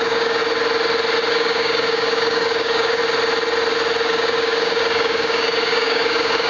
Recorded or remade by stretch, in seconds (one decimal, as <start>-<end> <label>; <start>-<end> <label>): 0.0-0.4 remade; 0.4-1.3 recorded; 1.3-3.0 remade; 3.0-4.1 recorded; 4.1-6.5 remade